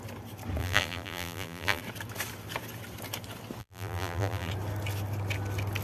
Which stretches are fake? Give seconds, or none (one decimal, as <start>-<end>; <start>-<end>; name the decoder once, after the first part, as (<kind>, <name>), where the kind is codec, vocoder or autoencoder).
0.6-1.8 (vocoder, BigVGAN v2); 3.6-4.5